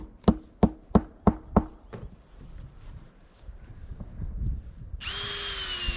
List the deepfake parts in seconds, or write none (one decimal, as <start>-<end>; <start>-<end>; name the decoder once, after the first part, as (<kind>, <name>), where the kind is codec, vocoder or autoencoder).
none

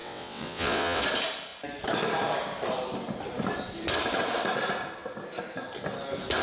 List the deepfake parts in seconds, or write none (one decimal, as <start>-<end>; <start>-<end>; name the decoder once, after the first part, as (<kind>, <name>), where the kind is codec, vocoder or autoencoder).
0.0-1.0 (vocoder, WaveNeXt)

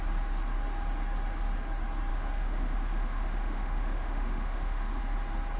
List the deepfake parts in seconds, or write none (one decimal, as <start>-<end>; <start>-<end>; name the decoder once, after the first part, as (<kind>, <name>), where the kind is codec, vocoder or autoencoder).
2.1-5.0 (autoencoder, DAC-VAE)

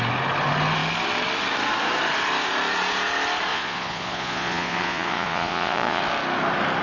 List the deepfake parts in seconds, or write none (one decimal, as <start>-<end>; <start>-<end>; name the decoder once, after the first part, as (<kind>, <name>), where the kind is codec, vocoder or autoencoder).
3.5-6.0 (vocoder, Vocos)

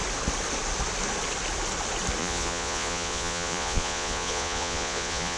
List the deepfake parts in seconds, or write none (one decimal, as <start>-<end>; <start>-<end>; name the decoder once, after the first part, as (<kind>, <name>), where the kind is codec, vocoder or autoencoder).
2.2-5.4 (vocoder, Vocos)

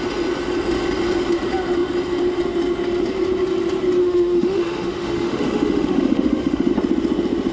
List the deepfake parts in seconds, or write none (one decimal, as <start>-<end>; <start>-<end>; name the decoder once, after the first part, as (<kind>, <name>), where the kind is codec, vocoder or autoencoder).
4.0-6.7 (autoencoder, DAC-VAE)